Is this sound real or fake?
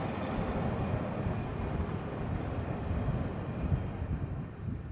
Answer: real